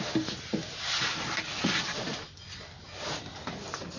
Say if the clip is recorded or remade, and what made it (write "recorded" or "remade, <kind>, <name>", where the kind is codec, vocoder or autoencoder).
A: recorded